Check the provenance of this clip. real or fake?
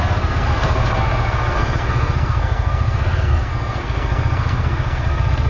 fake